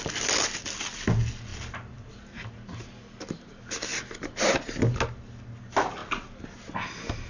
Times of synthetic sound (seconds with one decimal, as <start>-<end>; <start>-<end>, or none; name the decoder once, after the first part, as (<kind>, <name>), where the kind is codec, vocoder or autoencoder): 1.5-2.1 (vocoder, BigVGAN v2)